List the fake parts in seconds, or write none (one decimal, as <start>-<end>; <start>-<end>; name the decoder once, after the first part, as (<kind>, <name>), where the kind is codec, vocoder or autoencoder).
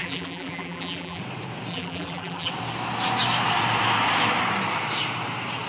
0.0-1.2 (vocoder, BigVGAN v2); 1.7-2.5